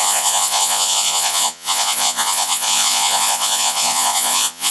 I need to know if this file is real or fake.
fake